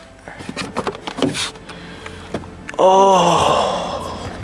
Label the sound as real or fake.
real